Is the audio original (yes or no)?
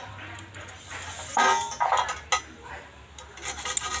yes